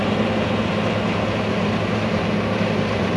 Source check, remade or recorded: remade